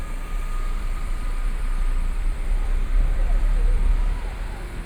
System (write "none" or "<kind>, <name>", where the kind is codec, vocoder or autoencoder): vocoder, BigVGAN v2